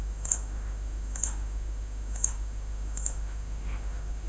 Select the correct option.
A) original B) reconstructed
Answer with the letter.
B